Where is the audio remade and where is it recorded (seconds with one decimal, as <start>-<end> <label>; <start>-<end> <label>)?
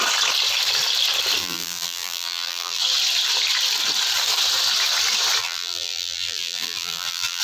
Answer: 0.0-1.4 recorded; 1.4-2.8 remade; 2.8-5.4 recorded; 5.4-7.4 remade